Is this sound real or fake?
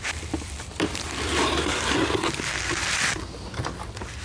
fake